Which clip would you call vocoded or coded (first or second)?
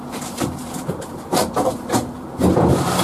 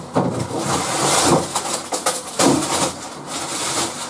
first